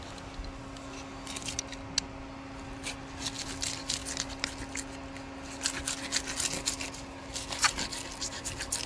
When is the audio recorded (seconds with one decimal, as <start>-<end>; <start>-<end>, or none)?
0.0-8.9